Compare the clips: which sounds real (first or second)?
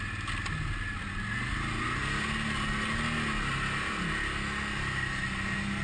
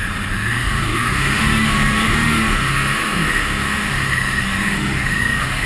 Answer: first